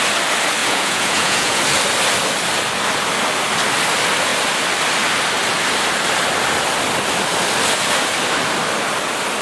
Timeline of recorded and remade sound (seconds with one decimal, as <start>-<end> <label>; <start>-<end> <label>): 0.0-0.6 recorded; 0.6-1.6 remade; 1.6-9.4 recorded